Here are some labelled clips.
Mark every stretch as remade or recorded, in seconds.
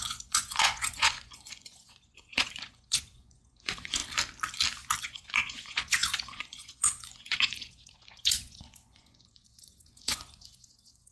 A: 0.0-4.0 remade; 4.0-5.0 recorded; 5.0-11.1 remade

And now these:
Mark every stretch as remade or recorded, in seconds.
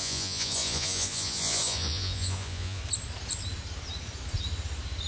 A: 0.0-2.8 remade; 2.8-5.1 recorded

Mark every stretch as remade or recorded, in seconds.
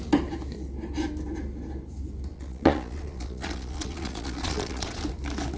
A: 0.0-2.3 recorded; 2.3-5.0 remade; 5.0-5.6 recorded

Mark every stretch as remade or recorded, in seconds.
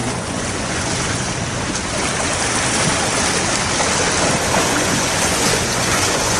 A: 0.0-1.3 remade; 1.3-4.6 recorded; 4.6-6.4 remade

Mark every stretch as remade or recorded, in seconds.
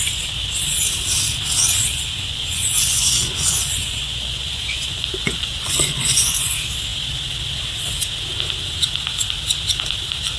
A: 0.0-1.8 recorded; 1.8-6.5 remade; 6.5-10.4 recorded